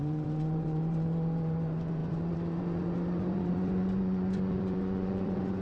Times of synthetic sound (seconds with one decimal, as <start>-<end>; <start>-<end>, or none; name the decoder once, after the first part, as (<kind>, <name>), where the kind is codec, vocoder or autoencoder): 0.0-5.6 (vocoder, Vocos)